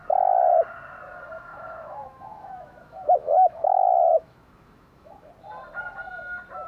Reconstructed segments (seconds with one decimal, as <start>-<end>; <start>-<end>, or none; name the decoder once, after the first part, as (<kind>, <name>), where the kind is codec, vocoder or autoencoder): 1.5-5.3 (autoencoder, DAC-VAE)